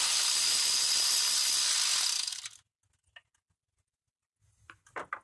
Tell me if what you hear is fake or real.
real